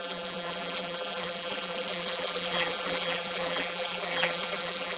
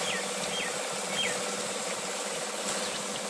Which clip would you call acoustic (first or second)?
second